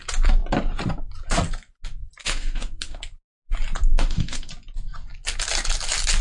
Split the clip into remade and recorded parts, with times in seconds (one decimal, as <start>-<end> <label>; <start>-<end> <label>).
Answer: 0.0-2.2 recorded; 2.2-3.0 remade; 3.0-3.9 recorded; 3.9-4.5 remade; 4.5-6.2 recorded